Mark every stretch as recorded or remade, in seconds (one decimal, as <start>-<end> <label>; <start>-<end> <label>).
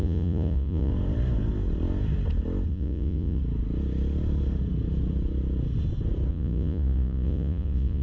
0.0-0.9 remade; 0.9-2.7 recorded; 2.7-3.4 remade; 3.4-6.3 recorded; 6.3-8.0 remade